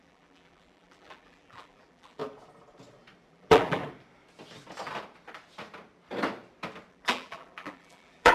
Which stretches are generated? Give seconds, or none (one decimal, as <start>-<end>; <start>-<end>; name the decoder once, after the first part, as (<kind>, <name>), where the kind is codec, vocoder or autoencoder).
0.0-2.2 (vocoder, BigVGAN v2); 3.3-3.8; 6.9-8.3